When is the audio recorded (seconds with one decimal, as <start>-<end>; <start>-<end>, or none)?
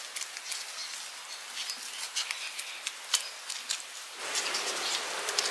0.0-5.5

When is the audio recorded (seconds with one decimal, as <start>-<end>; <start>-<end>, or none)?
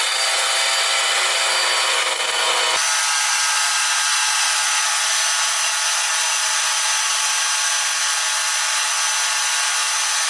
0.0-10.3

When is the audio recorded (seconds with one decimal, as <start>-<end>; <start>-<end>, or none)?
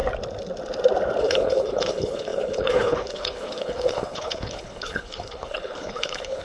0.0-1.2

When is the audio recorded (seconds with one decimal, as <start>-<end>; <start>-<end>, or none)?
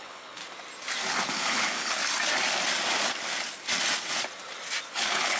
0.4-1.1; 2.0-4.9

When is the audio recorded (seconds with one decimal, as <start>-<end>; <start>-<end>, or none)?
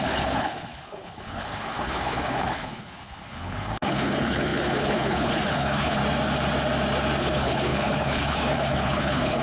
6.0-7.2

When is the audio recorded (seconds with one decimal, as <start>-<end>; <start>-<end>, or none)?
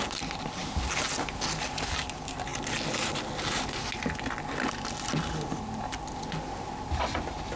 0.0-7.6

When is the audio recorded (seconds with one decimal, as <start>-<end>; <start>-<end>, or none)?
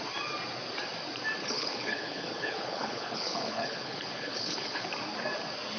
0.0-1.4; 4.9-5.8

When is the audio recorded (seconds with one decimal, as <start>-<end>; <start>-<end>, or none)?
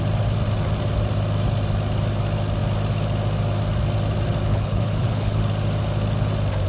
0.0-4.5; 5.4-6.7